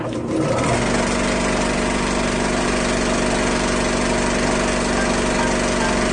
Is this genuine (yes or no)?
yes